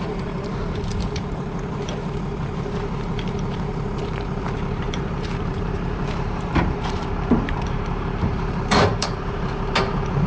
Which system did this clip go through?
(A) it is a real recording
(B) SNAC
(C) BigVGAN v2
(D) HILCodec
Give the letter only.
C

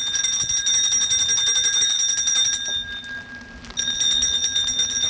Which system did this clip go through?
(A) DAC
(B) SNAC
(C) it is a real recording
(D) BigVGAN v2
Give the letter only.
C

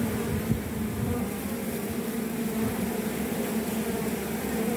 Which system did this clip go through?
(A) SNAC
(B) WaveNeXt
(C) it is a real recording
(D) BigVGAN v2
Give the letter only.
D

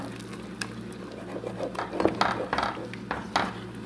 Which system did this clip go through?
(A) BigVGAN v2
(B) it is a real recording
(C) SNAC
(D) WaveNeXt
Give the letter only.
B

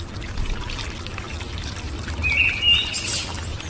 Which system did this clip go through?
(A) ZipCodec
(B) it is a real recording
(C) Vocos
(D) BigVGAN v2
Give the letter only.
B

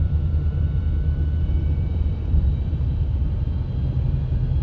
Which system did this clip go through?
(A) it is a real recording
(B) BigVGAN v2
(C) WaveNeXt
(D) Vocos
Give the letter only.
B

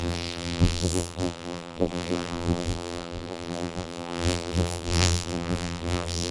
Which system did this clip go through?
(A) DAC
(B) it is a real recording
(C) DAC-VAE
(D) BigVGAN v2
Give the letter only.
D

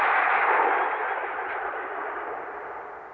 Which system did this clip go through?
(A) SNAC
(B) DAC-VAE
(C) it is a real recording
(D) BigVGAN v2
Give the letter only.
C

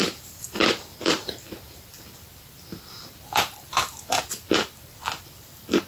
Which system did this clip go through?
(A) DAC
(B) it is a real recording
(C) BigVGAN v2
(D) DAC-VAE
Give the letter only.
C